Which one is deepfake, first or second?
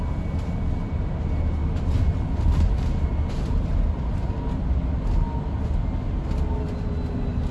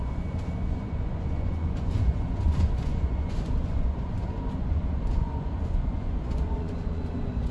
second